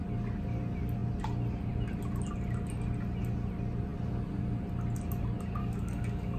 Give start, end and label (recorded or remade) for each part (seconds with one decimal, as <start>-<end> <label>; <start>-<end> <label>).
0.0-5.6 recorded; 5.6-6.4 remade